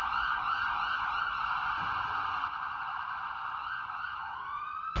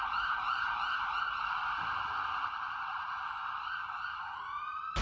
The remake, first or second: first